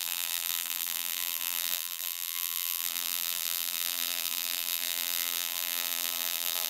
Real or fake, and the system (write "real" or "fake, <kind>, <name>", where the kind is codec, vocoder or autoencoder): fake, vocoder, BigVGAN v2